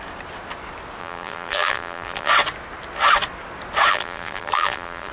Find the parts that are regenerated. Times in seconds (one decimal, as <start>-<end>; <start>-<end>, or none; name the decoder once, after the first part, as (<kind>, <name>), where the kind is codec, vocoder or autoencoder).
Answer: 1.0-2.3 (vocoder, BigVGAN v2); 3.9-5.1